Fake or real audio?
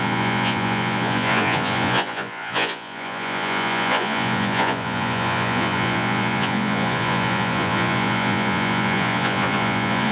fake